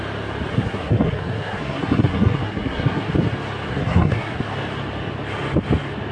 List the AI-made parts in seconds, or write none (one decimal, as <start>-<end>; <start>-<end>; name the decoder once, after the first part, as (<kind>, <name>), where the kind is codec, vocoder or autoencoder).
0.5-3.1 (codec, SNAC); 3.7-4.4